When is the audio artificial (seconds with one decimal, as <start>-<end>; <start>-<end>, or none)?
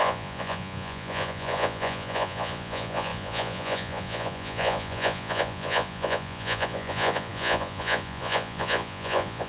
0.0-9.5